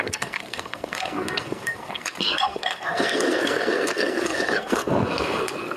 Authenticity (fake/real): fake